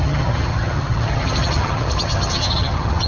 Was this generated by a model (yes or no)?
yes